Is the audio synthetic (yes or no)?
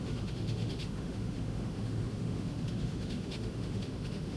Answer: yes